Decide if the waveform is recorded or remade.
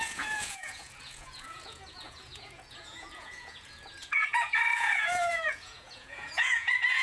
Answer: remade